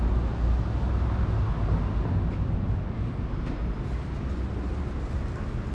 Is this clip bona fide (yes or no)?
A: yes